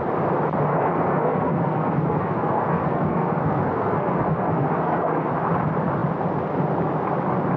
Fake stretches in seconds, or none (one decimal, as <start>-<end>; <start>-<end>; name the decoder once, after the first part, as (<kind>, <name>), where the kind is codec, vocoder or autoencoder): 0.7-5.3 (codec, SNAC)